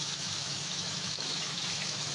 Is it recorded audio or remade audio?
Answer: remade